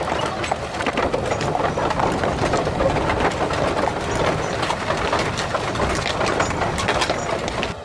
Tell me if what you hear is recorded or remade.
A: recorded